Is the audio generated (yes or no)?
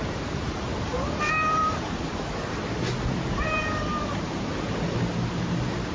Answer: yes